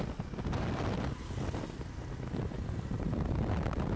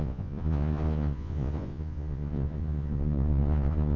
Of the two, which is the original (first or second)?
first